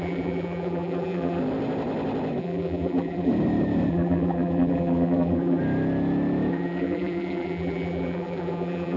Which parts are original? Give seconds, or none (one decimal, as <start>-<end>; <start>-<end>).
1.4-2.4; 3.3-3.9; 5.6-6.5